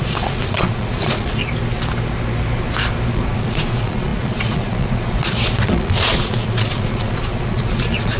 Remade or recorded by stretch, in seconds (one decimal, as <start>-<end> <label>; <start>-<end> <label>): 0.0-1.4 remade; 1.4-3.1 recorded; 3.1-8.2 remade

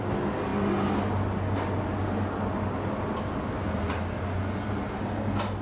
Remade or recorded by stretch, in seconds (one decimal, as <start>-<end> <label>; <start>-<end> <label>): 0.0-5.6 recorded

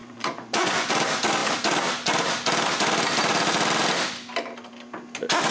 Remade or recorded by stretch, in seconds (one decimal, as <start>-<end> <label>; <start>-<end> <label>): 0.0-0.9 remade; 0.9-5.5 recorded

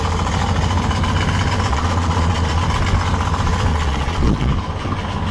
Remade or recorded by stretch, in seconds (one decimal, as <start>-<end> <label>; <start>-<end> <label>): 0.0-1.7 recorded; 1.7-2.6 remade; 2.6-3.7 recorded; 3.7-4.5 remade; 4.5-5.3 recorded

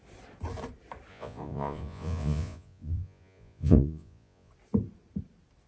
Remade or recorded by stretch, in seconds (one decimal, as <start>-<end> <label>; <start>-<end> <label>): 0.0-1.1 recorded; 1.1-4.5 remade; 4.5-5.7 recorded

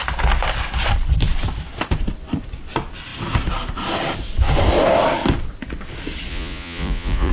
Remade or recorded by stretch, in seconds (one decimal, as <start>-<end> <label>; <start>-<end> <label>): 0.0-6.3 recorded; 6.3-7.3 remade

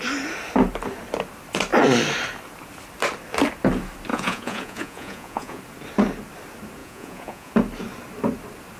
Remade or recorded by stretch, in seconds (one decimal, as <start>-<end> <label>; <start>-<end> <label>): 0.0-4.1 recorded; 4.1-5.6 remade; 5.6-6.8 recorded; 6.8-7.5 remade; 7.5-8.8 recorded

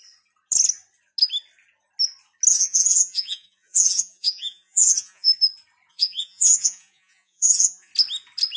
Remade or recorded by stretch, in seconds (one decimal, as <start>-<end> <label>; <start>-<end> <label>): 0.0-2.5 recorded; 2.5-5.3 remade; 5.3-5.9 recorded; 5.9-7.9 remade; 7.9-8.6 recorded